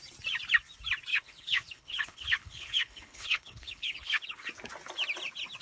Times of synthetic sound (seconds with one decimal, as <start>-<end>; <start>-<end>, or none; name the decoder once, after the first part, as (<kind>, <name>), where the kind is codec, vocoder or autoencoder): 1.1-4.5 (codec, HILCodec)